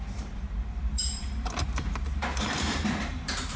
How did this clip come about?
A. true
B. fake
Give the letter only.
B